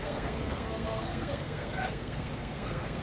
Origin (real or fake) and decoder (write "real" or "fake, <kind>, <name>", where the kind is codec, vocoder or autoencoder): fake, codec, SNAC